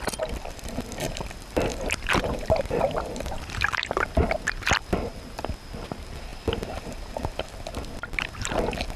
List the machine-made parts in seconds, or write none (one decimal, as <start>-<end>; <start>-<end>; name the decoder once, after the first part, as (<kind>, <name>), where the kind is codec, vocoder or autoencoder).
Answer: 1.7-4.0 (vocoder, BigVGAN v2)